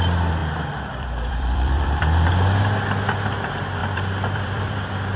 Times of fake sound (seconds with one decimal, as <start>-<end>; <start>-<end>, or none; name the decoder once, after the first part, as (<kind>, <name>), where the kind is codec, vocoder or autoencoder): 0.4-2.3 (vocoder, BigVGAN v2); 3.8-5.2